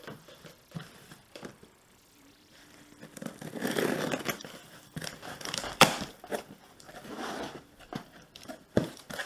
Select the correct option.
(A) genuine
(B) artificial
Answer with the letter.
B